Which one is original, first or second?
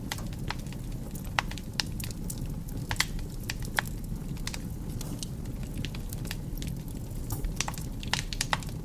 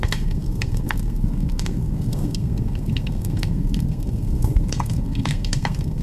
first